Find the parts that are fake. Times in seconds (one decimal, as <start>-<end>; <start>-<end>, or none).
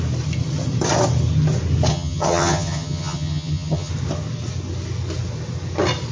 1.9-3.9